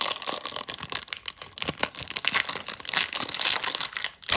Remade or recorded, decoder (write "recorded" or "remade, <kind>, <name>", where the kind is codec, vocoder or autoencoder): recorded